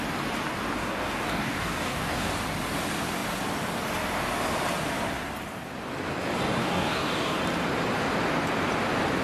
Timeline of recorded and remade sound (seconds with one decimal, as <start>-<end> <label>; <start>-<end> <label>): 0.0-0.8 recorded; 0.8-2.3 remade; 2.3-6.6 recorded; 6.6-7.4 remade; 7.4-9.2 recorded